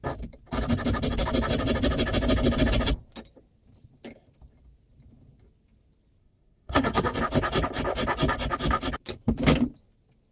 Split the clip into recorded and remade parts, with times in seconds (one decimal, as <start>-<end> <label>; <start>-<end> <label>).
0.0-6.2 recorded; 6.2-7.2 remade; 7.2-10.3 recorded